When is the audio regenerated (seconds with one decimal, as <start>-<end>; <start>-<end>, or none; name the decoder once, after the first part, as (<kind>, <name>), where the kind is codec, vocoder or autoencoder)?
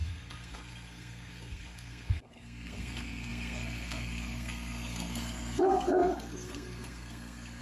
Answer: 0.0-7.6 (codec, SNAC)